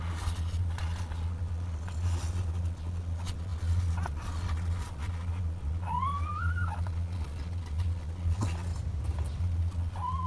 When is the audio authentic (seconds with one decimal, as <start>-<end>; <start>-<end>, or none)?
8.7-9.4